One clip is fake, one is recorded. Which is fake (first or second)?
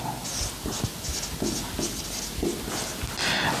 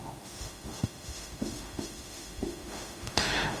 second